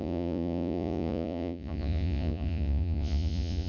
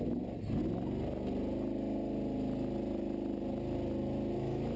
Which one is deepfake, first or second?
first